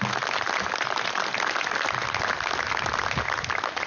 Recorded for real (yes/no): yes